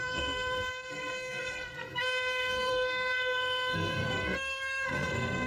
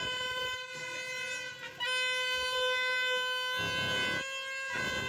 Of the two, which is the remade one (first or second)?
first